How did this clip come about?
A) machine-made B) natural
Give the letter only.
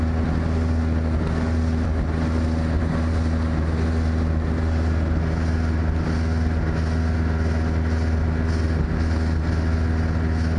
B